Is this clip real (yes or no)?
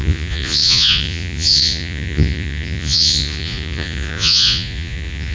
no